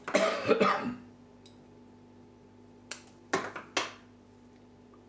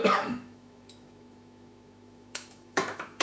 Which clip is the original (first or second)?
first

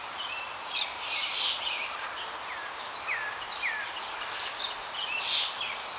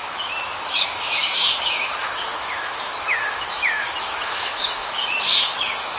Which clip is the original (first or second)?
first